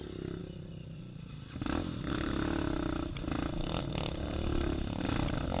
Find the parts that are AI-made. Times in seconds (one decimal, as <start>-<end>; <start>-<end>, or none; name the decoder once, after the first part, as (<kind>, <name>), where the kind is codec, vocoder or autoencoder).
none